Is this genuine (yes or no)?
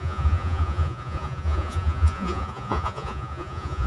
no